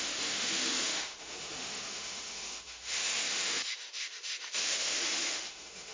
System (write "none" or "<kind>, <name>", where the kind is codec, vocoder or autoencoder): autoencoder, DAC-VAE